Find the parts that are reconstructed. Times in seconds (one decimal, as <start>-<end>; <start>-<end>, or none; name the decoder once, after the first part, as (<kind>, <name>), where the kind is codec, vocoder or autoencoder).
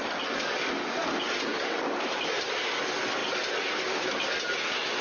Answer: none